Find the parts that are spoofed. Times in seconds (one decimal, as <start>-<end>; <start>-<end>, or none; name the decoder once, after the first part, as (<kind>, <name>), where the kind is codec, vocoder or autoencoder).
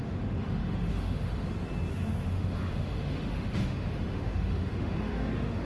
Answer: 0.0-1.3 (autoencoder, DAC-VAE); 1.9-5.7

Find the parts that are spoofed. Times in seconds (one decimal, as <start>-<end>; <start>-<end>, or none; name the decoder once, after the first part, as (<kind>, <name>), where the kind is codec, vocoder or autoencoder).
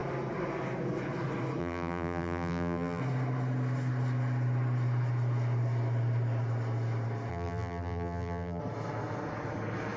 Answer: 1.6-3.0 (vocoder, BigVGAN v2); 7.3-8.6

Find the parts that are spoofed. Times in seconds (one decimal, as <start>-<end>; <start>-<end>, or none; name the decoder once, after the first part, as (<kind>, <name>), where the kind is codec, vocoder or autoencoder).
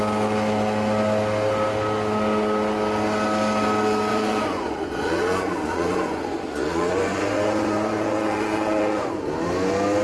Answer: 4.1-9.1 (vocoder, Vocos)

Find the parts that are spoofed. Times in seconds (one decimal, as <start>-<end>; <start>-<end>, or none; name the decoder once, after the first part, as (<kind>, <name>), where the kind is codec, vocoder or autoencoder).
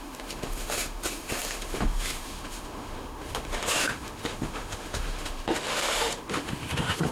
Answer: 0.0-7.1 (autoencoder, DAC-VAE)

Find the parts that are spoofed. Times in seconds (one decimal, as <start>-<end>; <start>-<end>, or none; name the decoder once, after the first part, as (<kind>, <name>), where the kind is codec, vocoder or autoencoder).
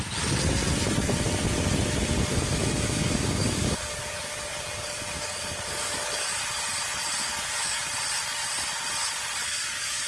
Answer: 2.6-6.4 (codec, DAC); 7.2-7.8; 9.4-10.1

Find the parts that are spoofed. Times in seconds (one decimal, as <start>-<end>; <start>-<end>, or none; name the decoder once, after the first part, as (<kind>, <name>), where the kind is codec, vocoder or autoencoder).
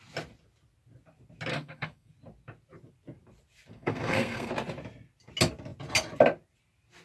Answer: 1.5-2.1 (codec, SNAC); 3.7-4.5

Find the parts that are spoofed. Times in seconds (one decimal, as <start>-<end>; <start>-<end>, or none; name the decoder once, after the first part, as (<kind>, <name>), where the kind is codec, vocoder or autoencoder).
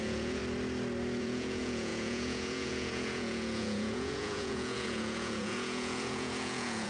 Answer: 0.0-0.4 (vocoder, Vocos); 1.2-6.9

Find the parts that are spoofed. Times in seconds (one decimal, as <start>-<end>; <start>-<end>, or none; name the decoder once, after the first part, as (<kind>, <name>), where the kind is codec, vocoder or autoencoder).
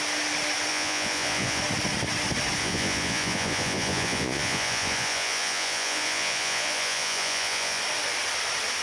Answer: 0.7-1.6 (vocoder, Vocos); 2.6-7.8